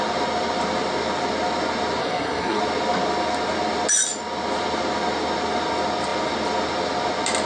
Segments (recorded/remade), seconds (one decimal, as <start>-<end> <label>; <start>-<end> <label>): 0.0-2.0 recorded; 2.0-2.6 remade; 2.6-7.5 recorded